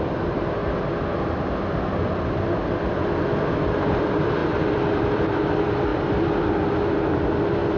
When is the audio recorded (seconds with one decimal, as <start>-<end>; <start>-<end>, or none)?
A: 0.6-2.0; 2.6-3.4; 5.9-7.8